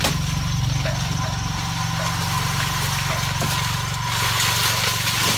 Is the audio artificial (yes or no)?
no